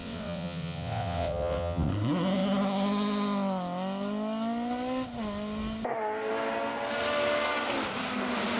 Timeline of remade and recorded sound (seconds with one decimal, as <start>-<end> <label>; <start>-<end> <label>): 0.0-1.9 remade; 1.9-8.6 recorded